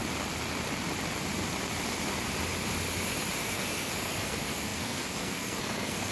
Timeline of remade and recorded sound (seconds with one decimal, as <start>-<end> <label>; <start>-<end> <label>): 0.0-3.4 recorded; 3.4-6.1 remade